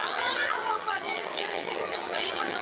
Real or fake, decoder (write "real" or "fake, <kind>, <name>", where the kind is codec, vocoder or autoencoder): fake, vocoder, HiFi-GAN